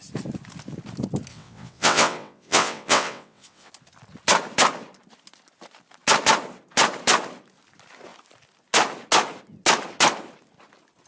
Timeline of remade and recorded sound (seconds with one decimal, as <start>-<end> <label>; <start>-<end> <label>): 0.0-1.3 recorded; 1.3-3.7 remade; 3.7-11.1 recorded